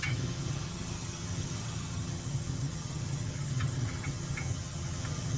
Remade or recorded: remade